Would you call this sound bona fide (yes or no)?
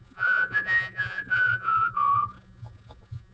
no